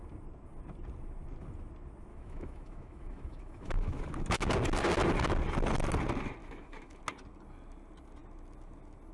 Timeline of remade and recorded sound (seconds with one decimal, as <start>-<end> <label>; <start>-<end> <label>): 0.0-2.1 recorded; 2.1-4.0 remade; 4.0-6.4 recorded; 6.4-7.0 remade; 7.0-9.1 recorded